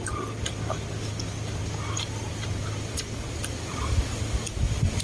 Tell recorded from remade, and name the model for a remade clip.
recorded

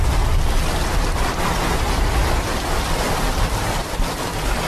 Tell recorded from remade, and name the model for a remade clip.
recorded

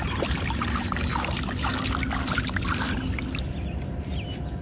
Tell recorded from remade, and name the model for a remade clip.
recorded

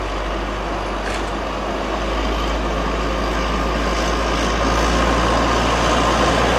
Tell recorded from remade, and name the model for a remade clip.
recorded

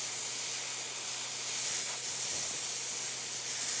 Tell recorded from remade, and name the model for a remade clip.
recorded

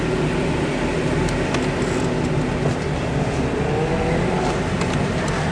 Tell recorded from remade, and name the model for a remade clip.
recorded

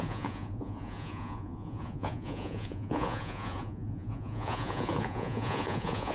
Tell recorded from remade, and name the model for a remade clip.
remade, vocoder, Vocos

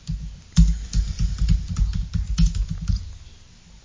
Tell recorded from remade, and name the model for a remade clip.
recorded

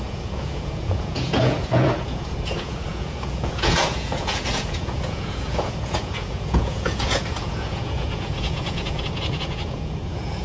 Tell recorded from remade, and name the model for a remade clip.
remade, vocoder, Vocos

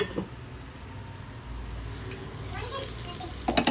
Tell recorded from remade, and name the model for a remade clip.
recorded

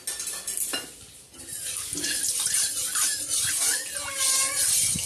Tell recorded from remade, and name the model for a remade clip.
recorded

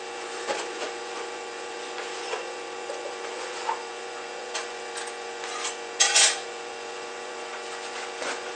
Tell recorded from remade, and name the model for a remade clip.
remade, vocoder, Vocos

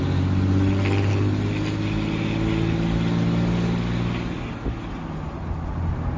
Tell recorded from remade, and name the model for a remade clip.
recorded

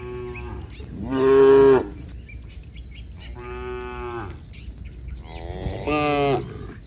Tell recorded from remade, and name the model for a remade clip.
recorded